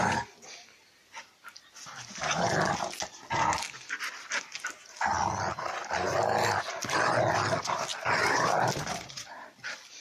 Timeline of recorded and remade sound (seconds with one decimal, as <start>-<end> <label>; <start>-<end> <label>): 0.0-7.9 recorded; 7.9-9.6 remade; 9.6-10.0 recorded